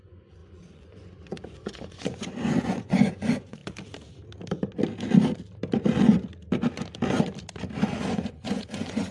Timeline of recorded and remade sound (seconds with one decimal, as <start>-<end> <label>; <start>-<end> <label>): 0.0-3.6 remade; 3.6-8.1 recorded; 8.1-9.1 remade